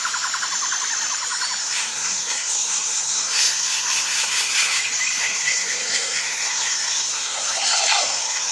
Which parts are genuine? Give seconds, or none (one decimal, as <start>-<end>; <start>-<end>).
0.0-1.6; 4.8-5.2